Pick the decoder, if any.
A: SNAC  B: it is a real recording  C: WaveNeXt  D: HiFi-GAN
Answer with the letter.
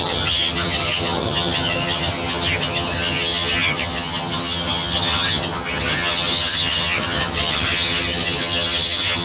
D